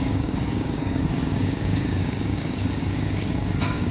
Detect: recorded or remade remade